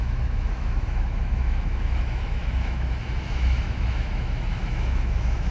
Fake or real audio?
fake